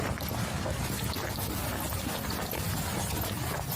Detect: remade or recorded recorded